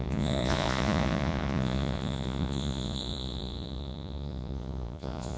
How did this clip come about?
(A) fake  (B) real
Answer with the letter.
A